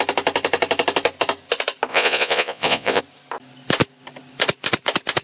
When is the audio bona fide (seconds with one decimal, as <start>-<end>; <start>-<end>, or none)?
0.0-1.9; 3.0-5.2